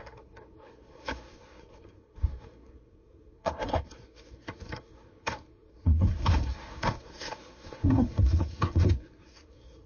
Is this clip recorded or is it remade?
remade